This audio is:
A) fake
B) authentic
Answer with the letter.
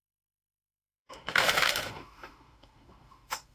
A